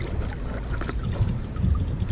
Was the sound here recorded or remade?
remade